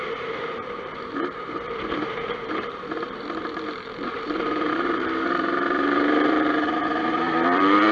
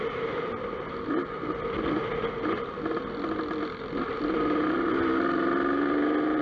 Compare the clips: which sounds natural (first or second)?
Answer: second